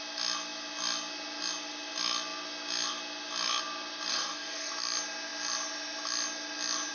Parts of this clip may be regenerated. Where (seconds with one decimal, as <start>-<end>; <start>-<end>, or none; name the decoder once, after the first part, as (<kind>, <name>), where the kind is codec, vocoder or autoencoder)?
4.1-4.7 (codec, DAC)